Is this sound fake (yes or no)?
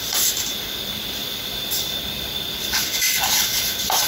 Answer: yes